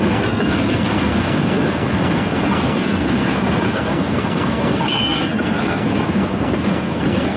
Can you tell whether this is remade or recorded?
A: remade